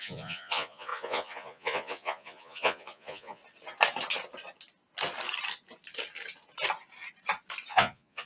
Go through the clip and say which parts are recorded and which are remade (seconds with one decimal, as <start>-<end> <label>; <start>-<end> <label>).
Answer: 0.0-3.4 remade; 3.4-7.7 recorded; 7.7-8.3 remade